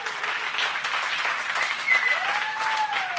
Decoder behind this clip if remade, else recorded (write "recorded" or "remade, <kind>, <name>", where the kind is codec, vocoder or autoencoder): recorded